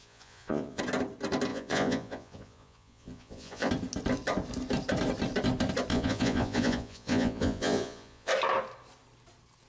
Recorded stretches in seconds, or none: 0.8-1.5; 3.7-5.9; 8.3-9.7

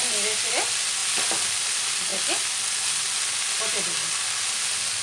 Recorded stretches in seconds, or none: 0.0-5.0

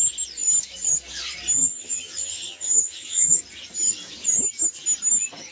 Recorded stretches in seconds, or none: 0.0-1.6; 3.4-5.5